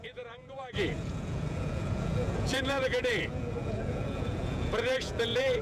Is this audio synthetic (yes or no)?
yes